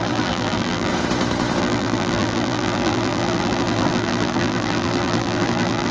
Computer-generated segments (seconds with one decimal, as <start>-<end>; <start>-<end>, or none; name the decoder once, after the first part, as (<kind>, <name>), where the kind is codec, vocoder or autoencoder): 0.0-0.9 (vocoder, BigVGAN v2); 1.6-5.9